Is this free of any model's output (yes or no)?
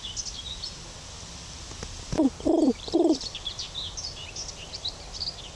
yes